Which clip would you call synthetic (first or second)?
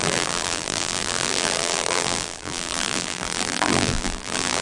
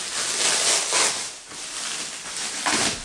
first